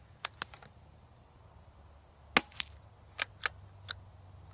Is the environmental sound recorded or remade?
recorded